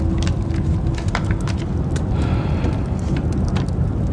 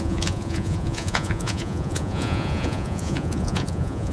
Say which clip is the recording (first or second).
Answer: first